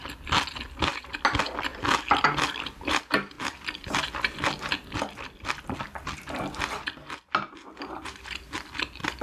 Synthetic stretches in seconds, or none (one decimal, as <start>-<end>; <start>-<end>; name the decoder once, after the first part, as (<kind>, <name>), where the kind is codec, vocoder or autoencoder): none